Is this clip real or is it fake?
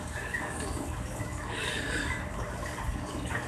fake